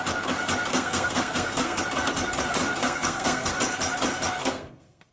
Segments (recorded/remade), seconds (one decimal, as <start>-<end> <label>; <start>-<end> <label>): 0.0-0.7 recorded; 0.7-1.8 remade; 1.8-2.8 recorded; 2.8-3.6 remade; 3.6-4.4 recorded; 4.4-5.1 remade